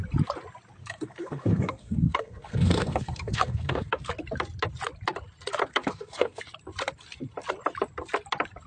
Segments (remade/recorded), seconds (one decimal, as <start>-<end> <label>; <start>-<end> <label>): 0.0-0.8 recorded; 0.8-4.1 remade; 4.1-5.7 recorded; 5.7-6.4 remade; 6.4-8.7 recorded